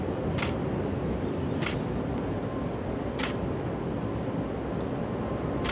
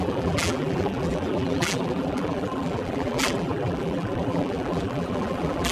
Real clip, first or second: first